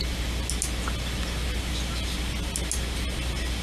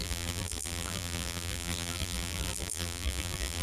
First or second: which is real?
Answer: first